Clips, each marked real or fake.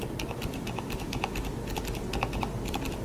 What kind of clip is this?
real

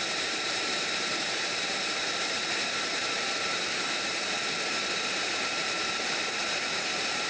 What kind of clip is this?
fake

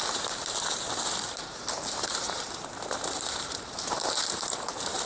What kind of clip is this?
fake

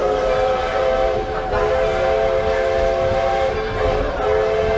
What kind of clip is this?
real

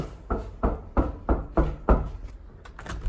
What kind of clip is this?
real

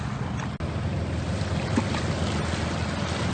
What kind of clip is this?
real